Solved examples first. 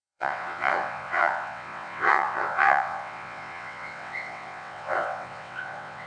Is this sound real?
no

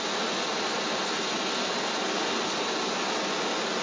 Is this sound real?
yes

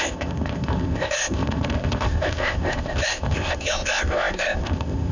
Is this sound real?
no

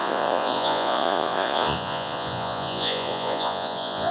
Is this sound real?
no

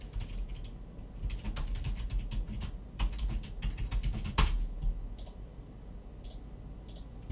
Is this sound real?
yes